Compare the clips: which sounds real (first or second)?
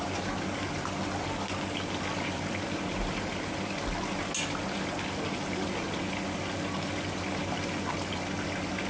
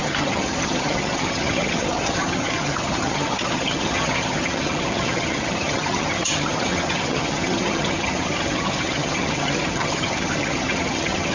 first